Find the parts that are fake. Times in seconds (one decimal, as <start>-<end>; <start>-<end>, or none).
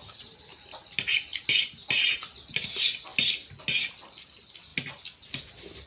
none